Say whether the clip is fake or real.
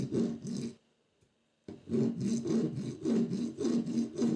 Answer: real